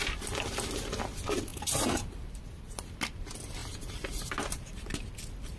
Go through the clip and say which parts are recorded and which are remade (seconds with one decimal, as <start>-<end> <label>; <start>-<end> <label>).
0.0-1.5 recorded; 1.5-2.3 remade; 2.3-3.6 recorded; 3.6-4.9 remade; 4.9-5.6 recorded

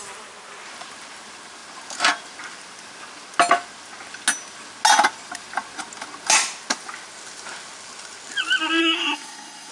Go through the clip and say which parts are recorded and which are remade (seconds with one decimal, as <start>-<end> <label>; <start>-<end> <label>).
0.0-8.8 recorded; 8.8-9.7 remade

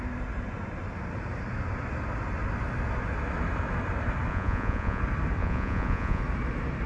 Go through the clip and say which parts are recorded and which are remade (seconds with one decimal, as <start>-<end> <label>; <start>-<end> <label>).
0.0-4.3 recorded; 4.3-5.0 remade; 5.0-5.4 recorded; 5.4-6.2 remade; 6.2-6.9 recorded

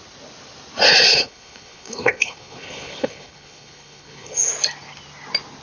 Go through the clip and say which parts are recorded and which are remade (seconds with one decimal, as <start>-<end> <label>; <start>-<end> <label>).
0.0-1.1 recorded; 1.1-4.5 remade; 4.5-5.6 recorded

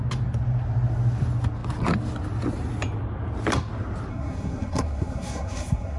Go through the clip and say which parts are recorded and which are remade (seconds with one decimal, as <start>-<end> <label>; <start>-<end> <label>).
0.0-4.1 recorded; 4.1-6.0 remade

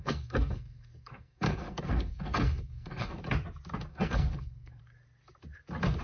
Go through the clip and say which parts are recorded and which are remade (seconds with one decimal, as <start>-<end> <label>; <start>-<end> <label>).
0.0-3.2 remade; 3.2-3.9 recorded; 3.9-4.8 remade; 4.8-6.0 recorded

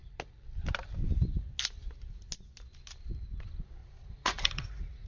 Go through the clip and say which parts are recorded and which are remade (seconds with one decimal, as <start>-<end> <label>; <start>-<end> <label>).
0.0-3.8 recorded; 3.8-5.1 remade